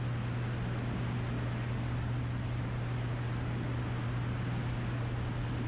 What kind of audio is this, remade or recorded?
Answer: recorded